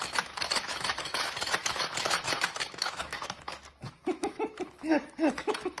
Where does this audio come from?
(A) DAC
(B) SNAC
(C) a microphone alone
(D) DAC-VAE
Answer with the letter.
D